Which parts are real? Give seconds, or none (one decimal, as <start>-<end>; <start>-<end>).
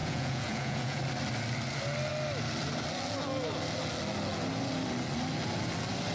1.0-6.1